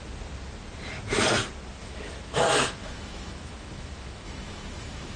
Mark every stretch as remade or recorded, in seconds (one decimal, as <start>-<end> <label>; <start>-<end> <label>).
0.0-1.8 recorded; 1.8-5.2 remade